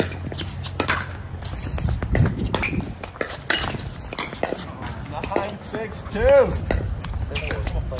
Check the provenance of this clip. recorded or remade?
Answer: recorded